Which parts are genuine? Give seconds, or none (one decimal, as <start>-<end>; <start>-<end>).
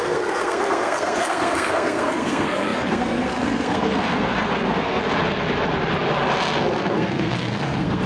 5.0-6.6